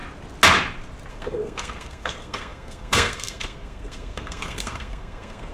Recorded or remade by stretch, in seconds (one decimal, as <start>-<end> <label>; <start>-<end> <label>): 0.0-1.1 recorded; 1.1-5.5 remade